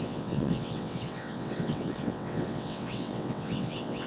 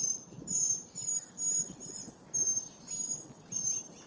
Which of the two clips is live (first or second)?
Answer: second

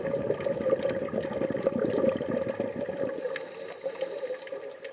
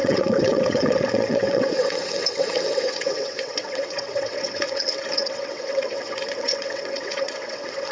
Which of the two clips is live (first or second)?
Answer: first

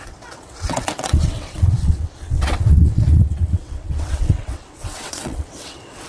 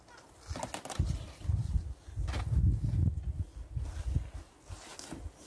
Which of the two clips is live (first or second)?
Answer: second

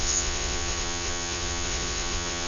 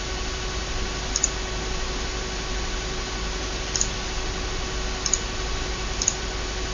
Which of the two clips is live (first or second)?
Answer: second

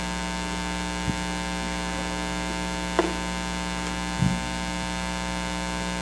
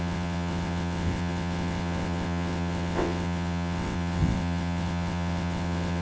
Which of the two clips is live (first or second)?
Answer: first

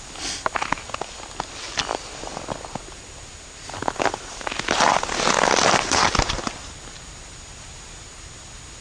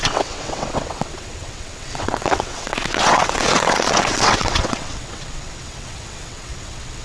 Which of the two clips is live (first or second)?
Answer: first